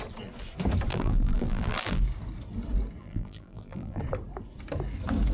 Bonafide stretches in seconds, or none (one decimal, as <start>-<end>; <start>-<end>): 0.0-0.9; 2.0-3.0; 4.0-5.3